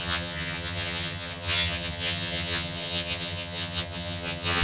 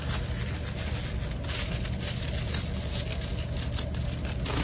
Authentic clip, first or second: second